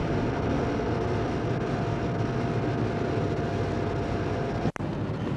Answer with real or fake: real